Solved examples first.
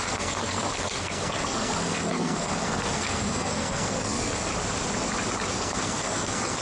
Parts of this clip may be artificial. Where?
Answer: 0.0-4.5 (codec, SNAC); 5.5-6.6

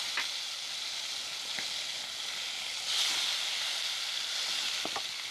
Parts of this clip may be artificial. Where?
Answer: none

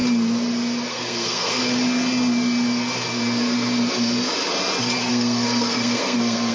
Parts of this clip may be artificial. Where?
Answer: 0.9-1.6 (codec, SNAC); 5.1-6.5

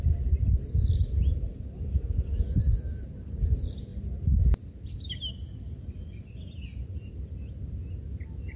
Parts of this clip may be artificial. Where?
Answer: none

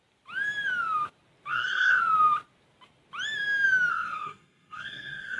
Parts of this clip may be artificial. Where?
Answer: 1.5-2.0 (codec, SNAC); 3.9-5.4

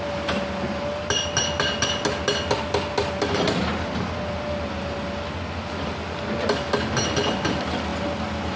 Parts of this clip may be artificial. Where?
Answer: none

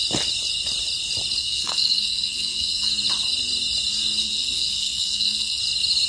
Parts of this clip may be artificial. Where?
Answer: 1.4-2.9 (codec, SNAC); 4.2-5.6

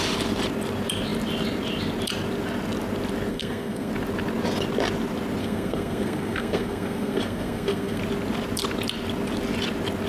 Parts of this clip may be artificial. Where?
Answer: 3.3-3.9 (codec, SNAC); 5.4-8.0